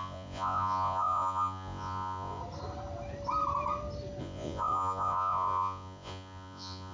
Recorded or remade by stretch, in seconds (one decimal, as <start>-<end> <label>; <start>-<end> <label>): 0.0-2.4 remade; 2.4-4.2 recorded; 4.2-6.9 remade